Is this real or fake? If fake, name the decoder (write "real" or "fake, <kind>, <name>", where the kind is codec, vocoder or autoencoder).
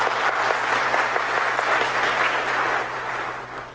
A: real